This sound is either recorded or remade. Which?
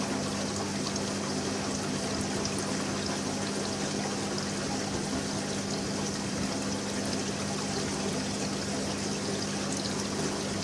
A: recorded